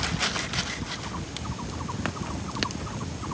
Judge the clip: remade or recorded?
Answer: recorded